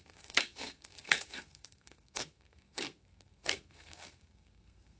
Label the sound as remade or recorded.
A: remade